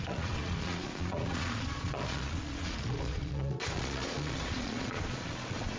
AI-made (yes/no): yes